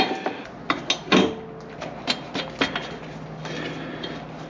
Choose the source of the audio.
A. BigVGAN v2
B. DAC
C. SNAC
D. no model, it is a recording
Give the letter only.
D